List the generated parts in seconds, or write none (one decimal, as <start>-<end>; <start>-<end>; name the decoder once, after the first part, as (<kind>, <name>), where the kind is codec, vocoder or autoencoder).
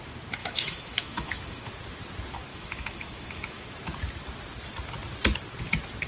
0.4-1.7 (autoencoder, DAC-VAE); 2.5-3.6